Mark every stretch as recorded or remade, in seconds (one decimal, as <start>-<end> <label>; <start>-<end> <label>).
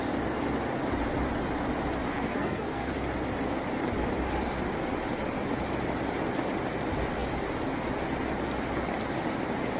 0.0-2.1 recorded; 2.1-2.9 remade; 2.9-9.8 recorded